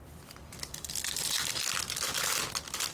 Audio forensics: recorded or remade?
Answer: recorded